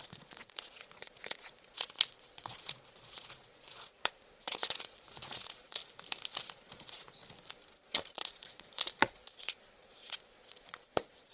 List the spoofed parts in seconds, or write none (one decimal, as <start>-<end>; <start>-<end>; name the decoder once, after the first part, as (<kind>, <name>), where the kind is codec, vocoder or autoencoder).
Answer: 0.0-5.8 (vocoder, Vocos); 6.4-7.2; 8.1-11.3